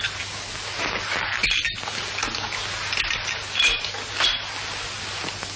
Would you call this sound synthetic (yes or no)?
no